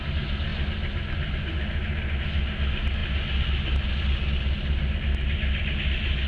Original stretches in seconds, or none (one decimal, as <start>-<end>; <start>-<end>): 0.0-6.3